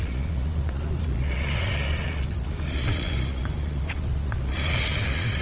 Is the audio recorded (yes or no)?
no